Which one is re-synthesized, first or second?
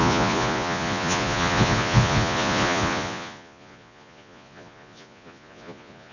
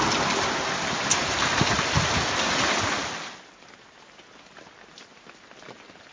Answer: first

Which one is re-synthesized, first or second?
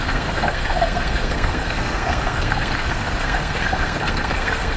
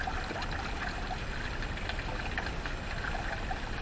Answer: first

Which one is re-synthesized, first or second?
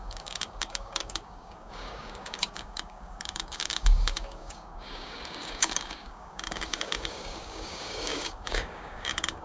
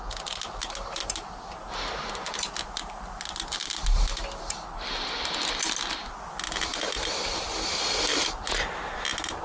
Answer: first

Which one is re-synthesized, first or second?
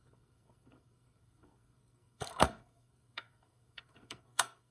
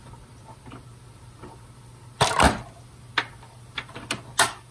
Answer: first